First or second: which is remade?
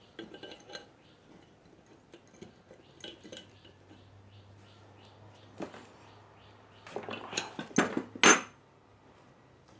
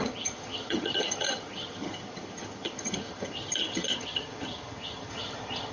second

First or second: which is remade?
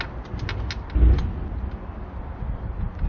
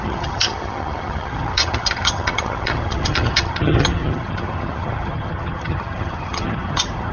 second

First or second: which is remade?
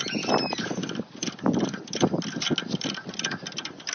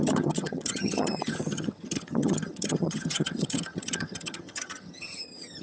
second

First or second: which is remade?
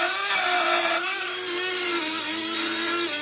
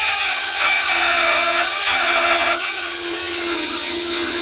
second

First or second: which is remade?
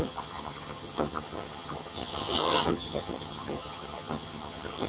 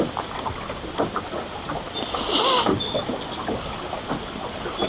first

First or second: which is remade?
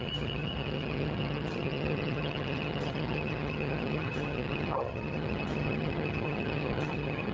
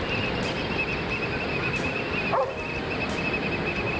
first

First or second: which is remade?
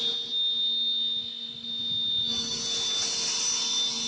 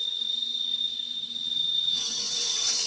second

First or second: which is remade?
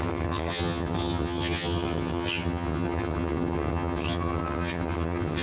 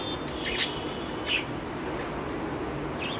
first